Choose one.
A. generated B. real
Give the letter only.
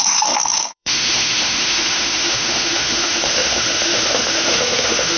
A